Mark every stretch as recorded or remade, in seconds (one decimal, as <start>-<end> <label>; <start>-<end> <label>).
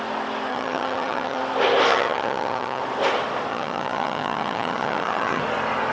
0.0-0.5 recorded; 0.5-1.4 remade; 1.4-1.9 recorded; 1.9-2.8 remade; 2.8-3.5 recorded; 3.5-5.4 remade; 5.4-5.9 recorded